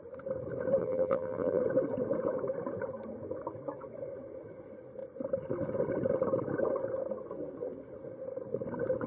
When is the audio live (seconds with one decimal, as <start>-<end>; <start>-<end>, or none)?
0.0-0.8; 1.6-9.1